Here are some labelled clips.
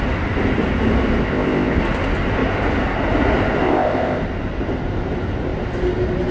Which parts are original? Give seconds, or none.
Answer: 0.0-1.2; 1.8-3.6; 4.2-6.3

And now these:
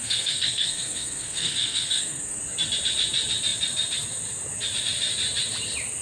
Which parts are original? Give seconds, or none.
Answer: 2.4-6.0